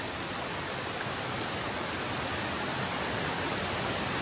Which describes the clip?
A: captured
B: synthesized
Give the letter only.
A